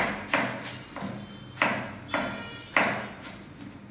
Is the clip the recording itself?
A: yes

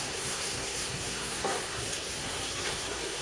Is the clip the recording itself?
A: no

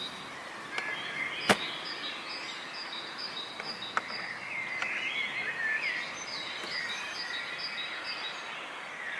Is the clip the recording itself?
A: yes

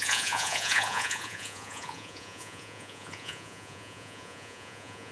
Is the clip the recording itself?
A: no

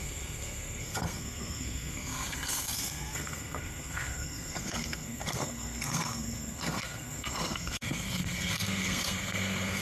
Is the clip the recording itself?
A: no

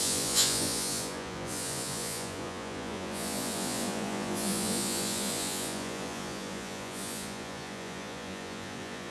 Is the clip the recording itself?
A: no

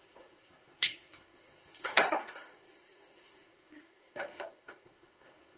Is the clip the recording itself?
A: no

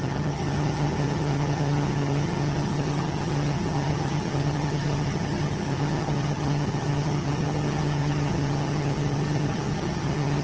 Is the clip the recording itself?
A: no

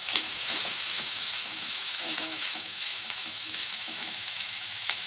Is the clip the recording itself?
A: no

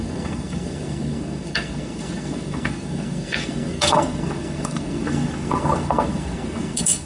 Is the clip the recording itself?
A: no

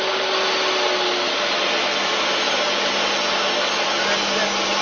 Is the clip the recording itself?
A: yes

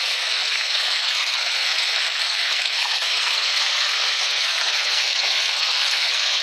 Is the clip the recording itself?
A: no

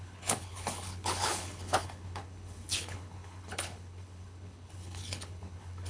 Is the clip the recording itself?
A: no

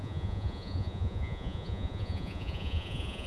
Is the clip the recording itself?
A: no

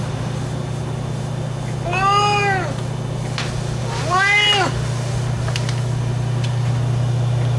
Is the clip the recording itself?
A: yes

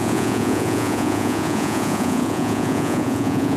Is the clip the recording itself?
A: no